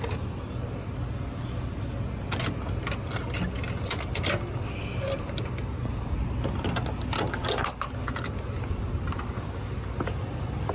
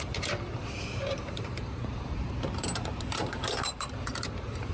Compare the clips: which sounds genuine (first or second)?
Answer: first